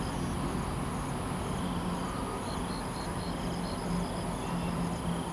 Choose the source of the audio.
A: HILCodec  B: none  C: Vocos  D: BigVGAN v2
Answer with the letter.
B